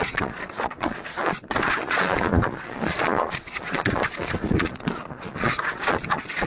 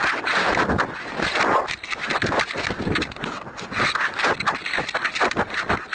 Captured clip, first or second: second